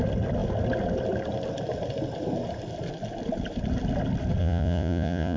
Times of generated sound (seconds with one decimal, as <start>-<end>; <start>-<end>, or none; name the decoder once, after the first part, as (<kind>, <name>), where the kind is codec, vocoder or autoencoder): 4.4-5.4 (vocoder, Vocos)